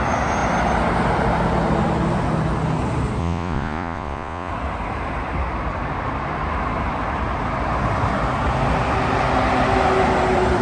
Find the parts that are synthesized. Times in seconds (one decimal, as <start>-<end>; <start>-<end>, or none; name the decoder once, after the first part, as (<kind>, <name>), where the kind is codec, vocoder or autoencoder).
3.2-4.5 (vocoder, Vocos)